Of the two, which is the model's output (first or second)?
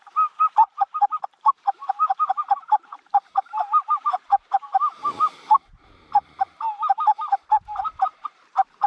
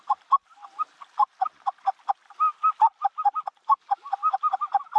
first